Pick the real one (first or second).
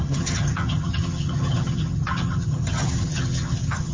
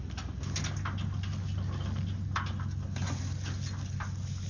second